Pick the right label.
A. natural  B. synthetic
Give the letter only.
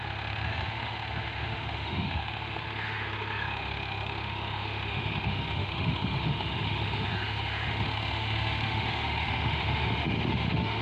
B